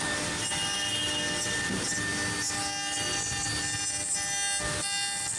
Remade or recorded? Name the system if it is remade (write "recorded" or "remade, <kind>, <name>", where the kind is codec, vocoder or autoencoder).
recorded